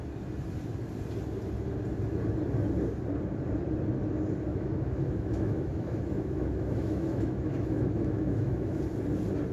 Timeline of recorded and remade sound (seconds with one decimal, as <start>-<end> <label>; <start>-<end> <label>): 0.0-4.5 recorded; 4.5-8.8 remade; 8.8-9.5 recorded